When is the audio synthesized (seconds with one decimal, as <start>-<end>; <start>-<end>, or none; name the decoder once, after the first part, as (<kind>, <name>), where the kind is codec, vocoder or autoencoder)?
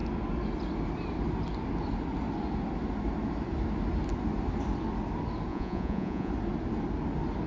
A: 5.5-6.3 (vocoder, Vocos)